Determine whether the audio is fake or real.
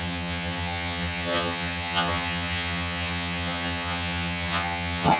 fake